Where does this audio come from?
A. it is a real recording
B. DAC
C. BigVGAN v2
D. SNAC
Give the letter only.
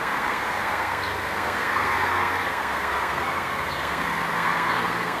D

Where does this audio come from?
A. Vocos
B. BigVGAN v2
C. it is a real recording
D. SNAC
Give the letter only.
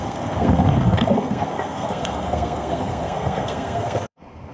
D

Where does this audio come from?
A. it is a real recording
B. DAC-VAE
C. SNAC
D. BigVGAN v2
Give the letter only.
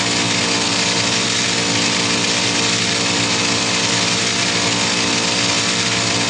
A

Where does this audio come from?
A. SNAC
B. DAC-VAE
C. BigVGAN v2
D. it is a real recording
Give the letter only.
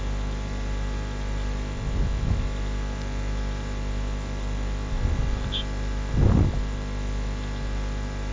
D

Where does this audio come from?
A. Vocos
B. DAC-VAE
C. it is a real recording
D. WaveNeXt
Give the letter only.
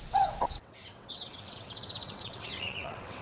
D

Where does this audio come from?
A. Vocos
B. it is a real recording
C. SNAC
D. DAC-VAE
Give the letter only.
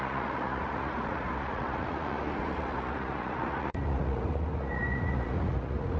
A